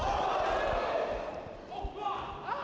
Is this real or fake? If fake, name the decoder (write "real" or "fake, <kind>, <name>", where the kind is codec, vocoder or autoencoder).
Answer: real